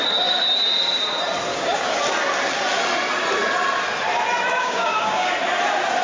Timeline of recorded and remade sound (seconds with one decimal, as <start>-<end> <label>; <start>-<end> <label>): 0.0-1.5 recorded; 1.5-2.0 remade; 2.0-4.5 recorded; 4.5-5.3 remade; 5.3-6.0 recorded